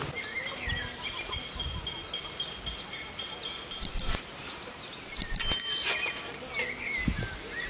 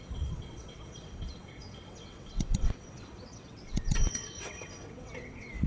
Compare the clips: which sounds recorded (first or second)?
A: first